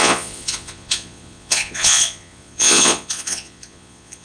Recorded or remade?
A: remade